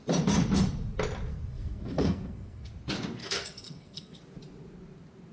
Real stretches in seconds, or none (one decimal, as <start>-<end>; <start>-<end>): 0.0-1.3; 2.7-3.2; 4.2-5.3